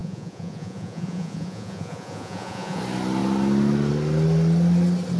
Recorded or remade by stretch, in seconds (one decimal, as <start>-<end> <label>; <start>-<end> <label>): 0.0-2.8 remade; 2.8-5.2 recorded